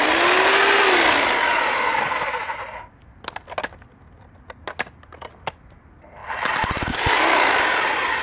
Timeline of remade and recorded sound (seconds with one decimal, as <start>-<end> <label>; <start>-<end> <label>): 0.0-8.2 recorded